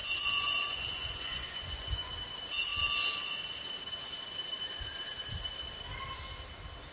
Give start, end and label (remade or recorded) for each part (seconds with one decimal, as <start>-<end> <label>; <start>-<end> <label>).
0.0-2.1 remade; 2.1-6.9 recorded